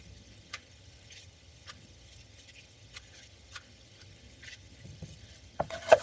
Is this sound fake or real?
fake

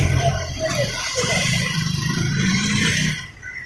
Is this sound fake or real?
fake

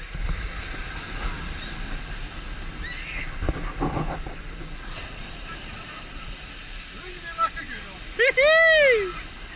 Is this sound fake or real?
real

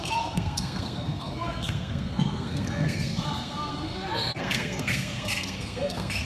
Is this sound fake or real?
fake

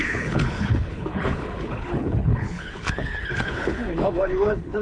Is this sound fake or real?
fake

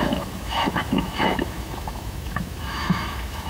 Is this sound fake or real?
fake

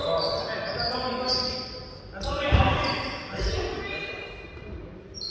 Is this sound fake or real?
real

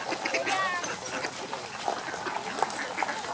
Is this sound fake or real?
real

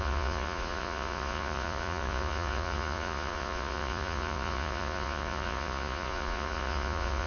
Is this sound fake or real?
fake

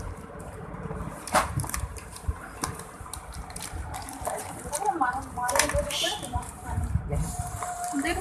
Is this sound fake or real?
fake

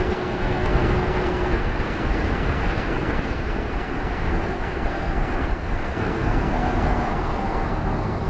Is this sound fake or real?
fake